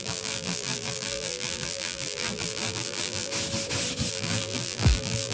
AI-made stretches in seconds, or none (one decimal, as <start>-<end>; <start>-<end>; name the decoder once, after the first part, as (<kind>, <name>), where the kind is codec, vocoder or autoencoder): 0.0-3.3 (vocoder, BigVGAN v2); 4.1-5.3